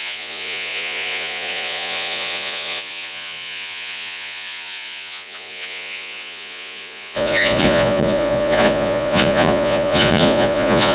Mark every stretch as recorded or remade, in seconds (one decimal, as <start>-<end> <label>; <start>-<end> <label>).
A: 0.0-10.9 remade